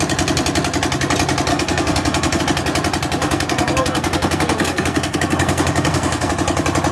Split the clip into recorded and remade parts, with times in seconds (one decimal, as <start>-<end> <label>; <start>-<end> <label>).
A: 0.0-1.5 recorded; 1.5-2.4 remade; 2.4-3.2 recorded; 3.2-6.3 remade; 6.3-6.9 recorded